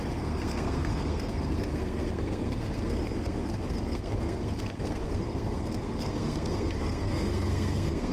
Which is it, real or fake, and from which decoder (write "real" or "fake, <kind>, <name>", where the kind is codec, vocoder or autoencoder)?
fake, codec, SNAC